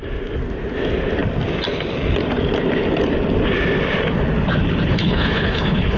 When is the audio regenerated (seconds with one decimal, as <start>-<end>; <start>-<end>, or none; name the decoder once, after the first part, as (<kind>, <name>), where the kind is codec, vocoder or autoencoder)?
4.9-6.0 (codec, HILCodec)